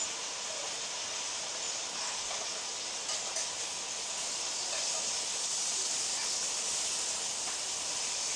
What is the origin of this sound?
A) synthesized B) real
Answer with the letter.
B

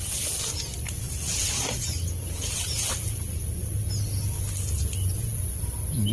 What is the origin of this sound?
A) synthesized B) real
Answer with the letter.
B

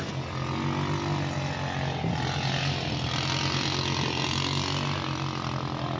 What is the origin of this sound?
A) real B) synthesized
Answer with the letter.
A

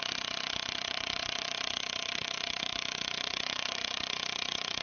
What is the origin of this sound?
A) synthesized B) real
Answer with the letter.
A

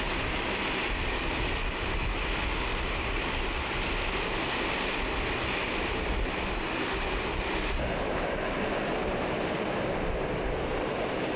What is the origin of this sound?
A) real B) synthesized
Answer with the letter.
A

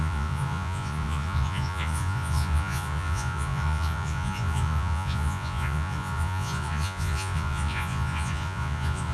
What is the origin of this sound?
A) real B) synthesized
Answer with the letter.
B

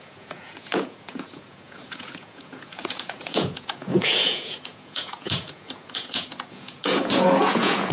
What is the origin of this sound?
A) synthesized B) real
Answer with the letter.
A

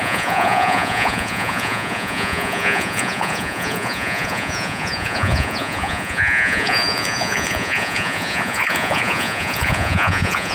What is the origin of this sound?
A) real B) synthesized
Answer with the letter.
B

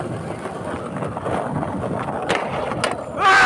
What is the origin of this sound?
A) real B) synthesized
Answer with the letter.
A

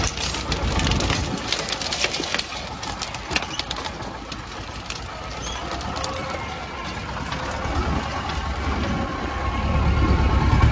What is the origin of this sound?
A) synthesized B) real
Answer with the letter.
B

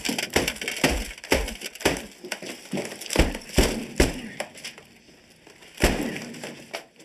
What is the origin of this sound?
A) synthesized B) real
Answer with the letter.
B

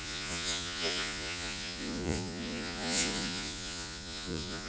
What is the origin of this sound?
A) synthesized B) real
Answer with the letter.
A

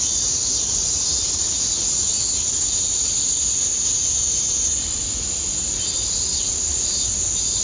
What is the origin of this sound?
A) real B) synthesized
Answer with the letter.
A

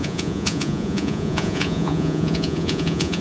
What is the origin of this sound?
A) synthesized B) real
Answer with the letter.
A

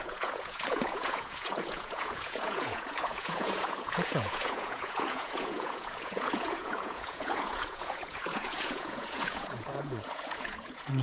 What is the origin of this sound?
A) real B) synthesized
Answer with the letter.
B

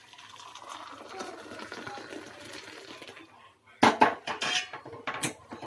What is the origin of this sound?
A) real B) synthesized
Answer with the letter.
A